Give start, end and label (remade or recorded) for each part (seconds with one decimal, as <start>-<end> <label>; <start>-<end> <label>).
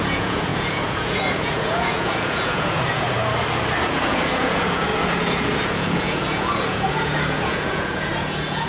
0.0-3.2 remade; 3.2-3.8 recorded; 3.8-8.7 remade